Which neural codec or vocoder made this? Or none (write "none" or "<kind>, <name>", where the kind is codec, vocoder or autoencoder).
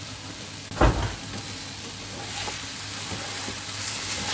none